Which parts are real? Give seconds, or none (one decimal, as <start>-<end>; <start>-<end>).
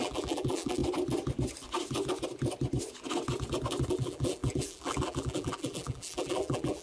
0.8-3.9